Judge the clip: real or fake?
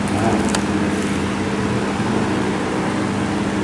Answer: real